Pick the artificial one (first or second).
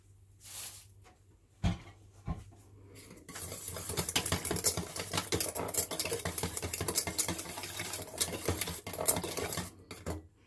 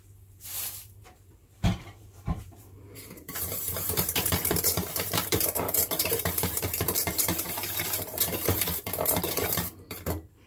second